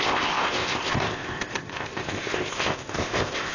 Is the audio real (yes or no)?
no